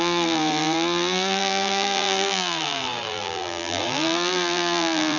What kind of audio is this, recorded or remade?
remade